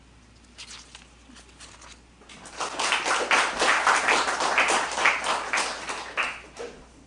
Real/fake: real